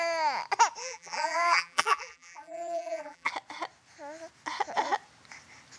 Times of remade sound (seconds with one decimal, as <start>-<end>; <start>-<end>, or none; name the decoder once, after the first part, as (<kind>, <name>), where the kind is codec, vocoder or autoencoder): 0.8-3.3 (vocoder, BigVGAN v2)